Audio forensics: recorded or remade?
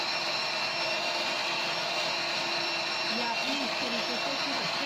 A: recorded